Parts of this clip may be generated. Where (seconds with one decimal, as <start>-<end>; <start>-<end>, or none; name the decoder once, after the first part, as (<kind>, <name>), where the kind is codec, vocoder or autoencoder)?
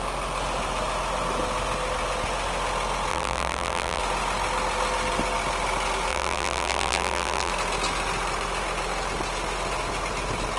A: 3.1-4.0 (vocoder, BigVGAN v2); 6.1-7.5